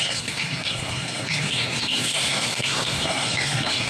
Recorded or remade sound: remade